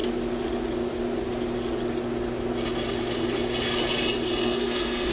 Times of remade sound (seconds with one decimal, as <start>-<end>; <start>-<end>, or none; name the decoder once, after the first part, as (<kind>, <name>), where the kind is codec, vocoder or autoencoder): 4.4-5.1 (codec, SNAC)